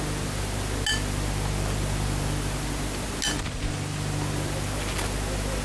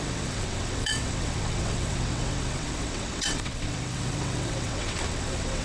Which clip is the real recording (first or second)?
first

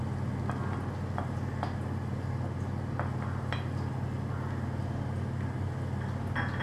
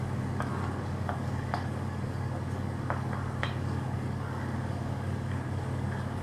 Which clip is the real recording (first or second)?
first